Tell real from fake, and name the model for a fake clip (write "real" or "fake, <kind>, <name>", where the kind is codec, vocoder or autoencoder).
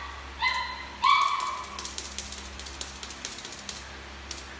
real